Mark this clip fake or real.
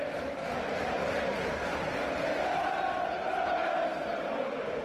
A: real